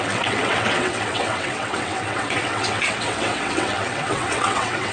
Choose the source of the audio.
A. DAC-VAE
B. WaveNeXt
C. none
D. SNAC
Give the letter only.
B